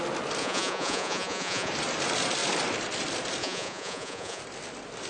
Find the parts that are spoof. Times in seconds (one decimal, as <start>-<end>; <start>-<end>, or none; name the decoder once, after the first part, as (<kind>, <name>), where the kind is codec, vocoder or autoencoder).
0.4-1.7 (vocoder, Vocos); 3.4-4.4